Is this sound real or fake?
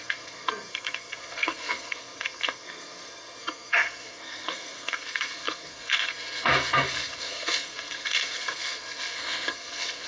fake